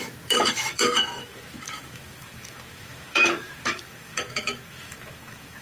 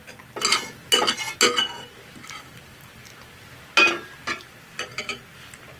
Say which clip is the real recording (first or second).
second